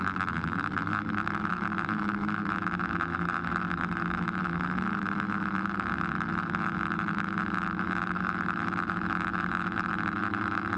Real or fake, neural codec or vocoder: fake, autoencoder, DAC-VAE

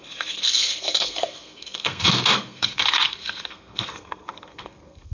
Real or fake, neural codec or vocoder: fake, codec, SNAC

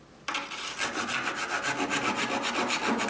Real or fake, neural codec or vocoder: real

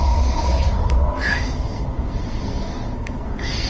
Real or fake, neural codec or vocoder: fake, codec, SNAC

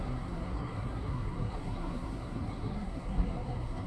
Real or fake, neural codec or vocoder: fake, codec, SNAC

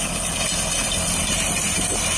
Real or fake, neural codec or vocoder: real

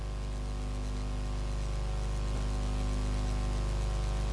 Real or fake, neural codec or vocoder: real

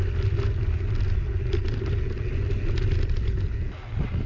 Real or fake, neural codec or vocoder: real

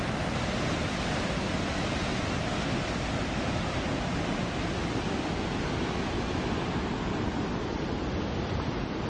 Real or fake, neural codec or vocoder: real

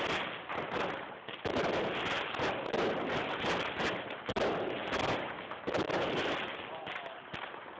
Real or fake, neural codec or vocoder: real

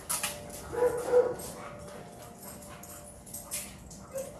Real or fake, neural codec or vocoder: real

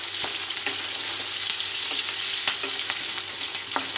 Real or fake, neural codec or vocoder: real